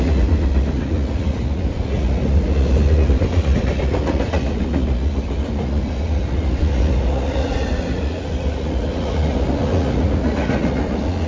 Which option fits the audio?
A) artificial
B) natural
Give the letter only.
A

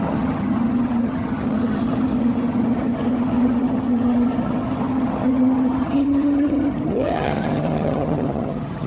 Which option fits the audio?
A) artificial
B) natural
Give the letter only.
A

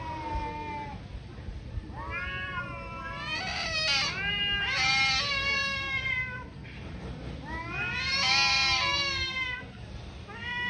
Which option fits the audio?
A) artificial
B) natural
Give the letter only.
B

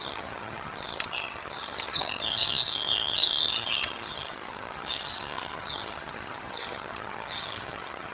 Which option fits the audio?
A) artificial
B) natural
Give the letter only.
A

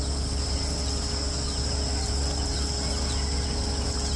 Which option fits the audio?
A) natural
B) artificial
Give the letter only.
A